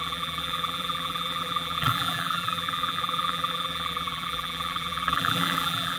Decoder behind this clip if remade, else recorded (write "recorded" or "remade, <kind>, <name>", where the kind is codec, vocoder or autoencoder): remade, vocoder, BigVGAN v2